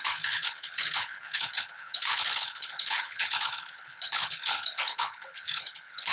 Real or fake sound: fake